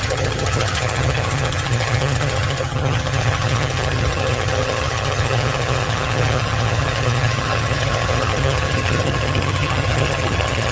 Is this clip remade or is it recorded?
remade